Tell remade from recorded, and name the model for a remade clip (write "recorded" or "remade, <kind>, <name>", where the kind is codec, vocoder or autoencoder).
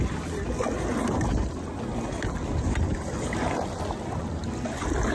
recorded